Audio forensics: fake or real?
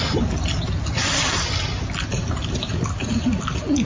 real